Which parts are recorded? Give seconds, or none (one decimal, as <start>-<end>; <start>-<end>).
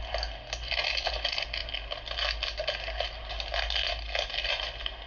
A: 0.0-5.1